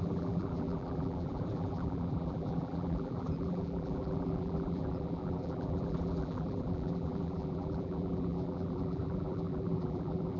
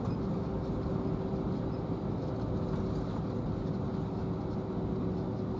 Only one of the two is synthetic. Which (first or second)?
first